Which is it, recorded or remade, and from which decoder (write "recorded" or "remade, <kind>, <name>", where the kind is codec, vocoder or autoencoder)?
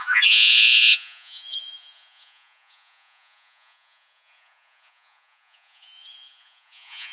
remade, vocoder, Vocos